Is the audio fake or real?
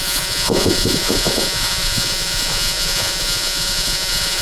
fake